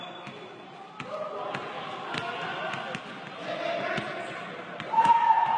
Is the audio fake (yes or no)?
no